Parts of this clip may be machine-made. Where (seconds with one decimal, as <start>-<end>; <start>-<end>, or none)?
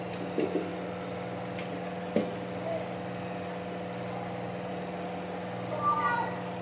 none